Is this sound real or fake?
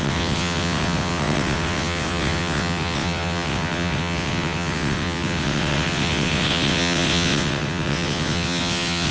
fake